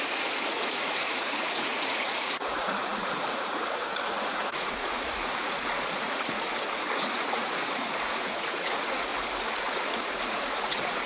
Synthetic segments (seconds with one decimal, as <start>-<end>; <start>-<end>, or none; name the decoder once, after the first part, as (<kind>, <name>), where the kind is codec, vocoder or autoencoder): 0.0-9.1 (vocoder, Vocos); 9.7-11.1